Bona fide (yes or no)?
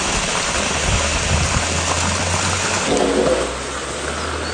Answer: yes